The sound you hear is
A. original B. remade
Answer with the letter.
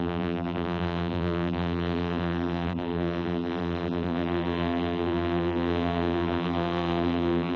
B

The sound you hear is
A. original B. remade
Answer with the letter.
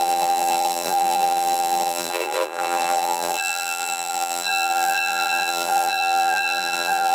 B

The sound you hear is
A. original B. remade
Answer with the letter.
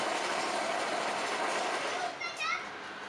A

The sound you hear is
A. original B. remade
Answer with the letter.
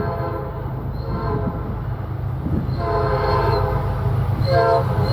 A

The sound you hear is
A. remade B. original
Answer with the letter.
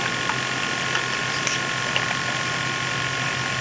B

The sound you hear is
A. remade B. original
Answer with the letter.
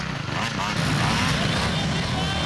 B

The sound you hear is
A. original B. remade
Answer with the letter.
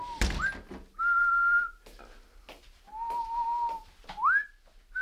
A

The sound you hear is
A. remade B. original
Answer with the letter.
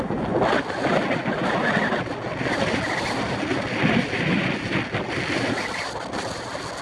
B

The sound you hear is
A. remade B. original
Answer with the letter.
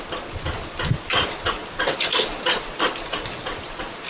B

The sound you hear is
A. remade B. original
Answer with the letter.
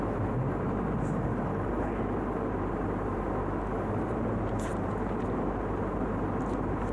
A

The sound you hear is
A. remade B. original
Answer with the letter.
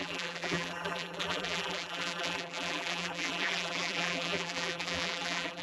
A